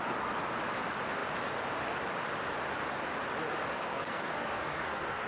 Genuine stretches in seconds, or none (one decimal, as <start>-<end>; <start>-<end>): 0.0-3.7